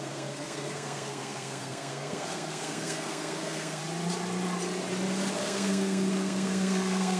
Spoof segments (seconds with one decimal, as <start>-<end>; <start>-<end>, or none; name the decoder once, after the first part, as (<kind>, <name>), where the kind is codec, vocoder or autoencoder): 0.0-3.8 (codec, SNAC); 5.3-7.2